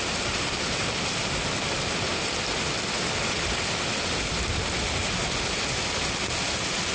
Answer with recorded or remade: recorded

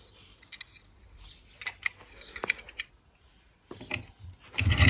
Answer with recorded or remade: recorded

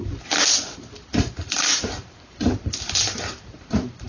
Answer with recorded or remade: remade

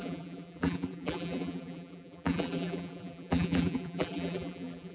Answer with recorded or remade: remade